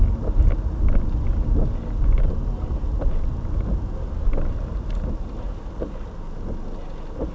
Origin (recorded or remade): recorded